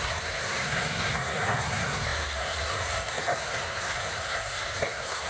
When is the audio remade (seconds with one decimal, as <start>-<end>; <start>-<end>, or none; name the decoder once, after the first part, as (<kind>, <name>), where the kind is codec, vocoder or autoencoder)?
0.0-5.3 (codec, SNAC)